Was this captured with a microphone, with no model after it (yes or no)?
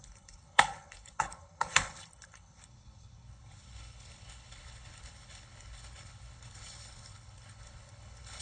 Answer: no